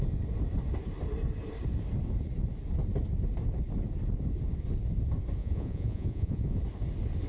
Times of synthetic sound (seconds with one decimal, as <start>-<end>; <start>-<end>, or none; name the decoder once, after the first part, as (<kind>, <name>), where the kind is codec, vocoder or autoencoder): 5.4-6.6 (vocoder, Vocos)